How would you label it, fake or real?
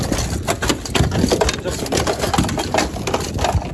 real